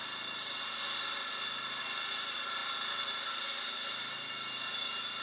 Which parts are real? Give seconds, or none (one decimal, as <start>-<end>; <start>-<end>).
0.0-5.2